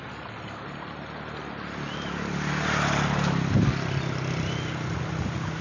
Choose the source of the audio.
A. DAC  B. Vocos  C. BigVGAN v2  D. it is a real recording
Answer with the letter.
D